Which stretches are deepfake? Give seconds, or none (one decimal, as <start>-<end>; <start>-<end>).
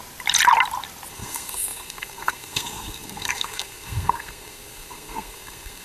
1.1-5.8